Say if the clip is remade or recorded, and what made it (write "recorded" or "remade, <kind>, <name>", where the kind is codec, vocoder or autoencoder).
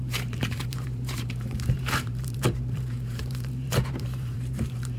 remade, vocoder, BigVGAN v2